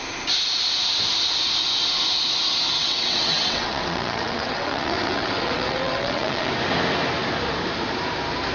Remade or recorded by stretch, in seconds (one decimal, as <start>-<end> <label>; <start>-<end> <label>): 0.0-2.8 recorded; 2.8-6.5 remade; 6.5-8.5 recorded

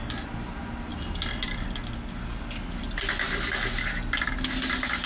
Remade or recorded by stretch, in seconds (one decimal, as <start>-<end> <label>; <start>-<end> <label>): 0.0-5.1 recorded

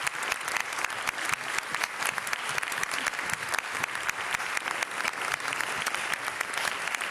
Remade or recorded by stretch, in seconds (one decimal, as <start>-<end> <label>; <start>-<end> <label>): 0.0-7.1 recorded

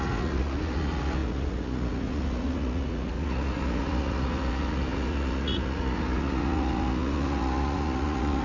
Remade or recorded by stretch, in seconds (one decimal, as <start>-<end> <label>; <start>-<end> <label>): 0.0-8.4 remade

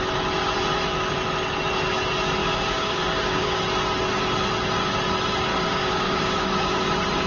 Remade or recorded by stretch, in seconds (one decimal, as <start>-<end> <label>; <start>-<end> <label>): 0.0-2.4 recorded; 2.4-3.6 remade; 3.6-5.5 recorded; 5.5-6.8 remade; 6.8-7.3 recorded

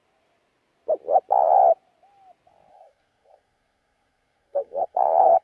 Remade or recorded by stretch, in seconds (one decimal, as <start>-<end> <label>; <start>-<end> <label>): 0.0-2.7 recorded; 2.7-5.4 remade

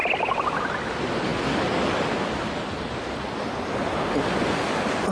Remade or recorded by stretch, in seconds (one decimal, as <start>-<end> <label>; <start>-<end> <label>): 0.0-5.1 recorded

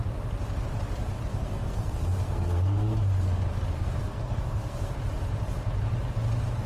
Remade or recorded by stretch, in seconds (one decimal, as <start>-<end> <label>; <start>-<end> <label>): 0.0-1.3 recorded; 1.3-3.4 remade; 3.4-4.0 recorded; 4.0-4.9 remade; 4.9-6.7 recorded